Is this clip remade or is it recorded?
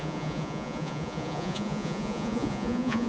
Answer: remade